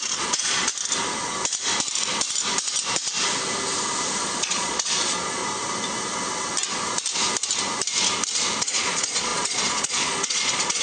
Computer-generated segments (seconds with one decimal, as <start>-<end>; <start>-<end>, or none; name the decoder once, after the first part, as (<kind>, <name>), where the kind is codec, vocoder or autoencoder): 0.0-0.7 (vocoder, Vocos); 4.2-5.4; 8.6-10.8